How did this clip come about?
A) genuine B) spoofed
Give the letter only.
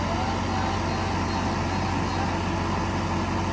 A